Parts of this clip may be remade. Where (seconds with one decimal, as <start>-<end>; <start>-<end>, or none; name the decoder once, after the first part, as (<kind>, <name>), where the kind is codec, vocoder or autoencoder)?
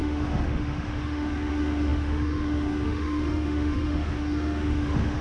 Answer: 0.0-5.2 (autoencoder, DAC-VAE)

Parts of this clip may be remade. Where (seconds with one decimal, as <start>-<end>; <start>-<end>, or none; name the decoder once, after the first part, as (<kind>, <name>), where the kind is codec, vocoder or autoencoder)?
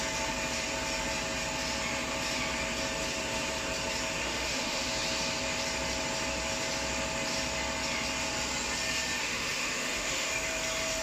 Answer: 4.2-4.8 (autoencoder, DAC-VAE); 9.2-10.3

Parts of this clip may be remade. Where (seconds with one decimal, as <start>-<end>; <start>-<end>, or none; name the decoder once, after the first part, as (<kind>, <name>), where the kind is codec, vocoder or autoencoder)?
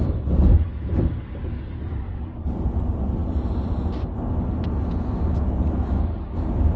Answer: none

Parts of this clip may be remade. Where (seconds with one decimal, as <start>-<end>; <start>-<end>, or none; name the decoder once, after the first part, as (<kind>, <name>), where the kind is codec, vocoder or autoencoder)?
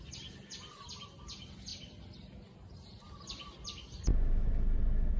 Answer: none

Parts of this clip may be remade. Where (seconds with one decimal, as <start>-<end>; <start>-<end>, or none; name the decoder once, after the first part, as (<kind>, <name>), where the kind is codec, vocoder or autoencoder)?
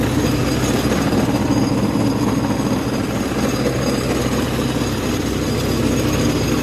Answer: none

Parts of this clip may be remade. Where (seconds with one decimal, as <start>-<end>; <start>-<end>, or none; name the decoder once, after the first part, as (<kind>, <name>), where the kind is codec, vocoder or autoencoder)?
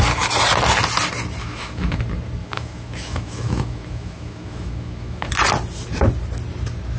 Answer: 1.4-2.0 (autoencoder, DAC-VAE); 2.4-5.3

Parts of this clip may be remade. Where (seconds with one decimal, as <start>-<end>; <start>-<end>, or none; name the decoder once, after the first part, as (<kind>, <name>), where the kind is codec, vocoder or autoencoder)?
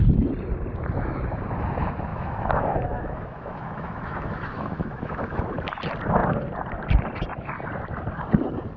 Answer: 2.1-5.4 (autoencoder, DAC-VAE)